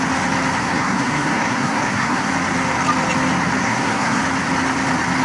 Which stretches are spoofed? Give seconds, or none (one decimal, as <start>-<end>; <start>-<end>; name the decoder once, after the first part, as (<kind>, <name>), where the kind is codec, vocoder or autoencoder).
0.6-2.3 (codec, SNAC); 3.6-4.2